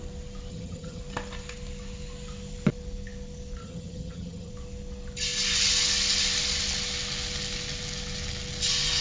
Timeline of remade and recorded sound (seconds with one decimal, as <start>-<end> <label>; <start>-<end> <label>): 0.0-0.5 recorded; 0.5-1.0 remade; 1.0-3.6 recorded; 3.6-4.5 remade; 4.5-9.0 recorded